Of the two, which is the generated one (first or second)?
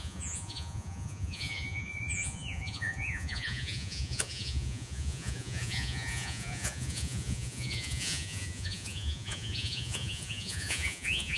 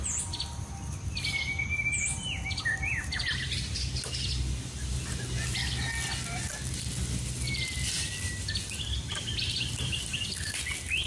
first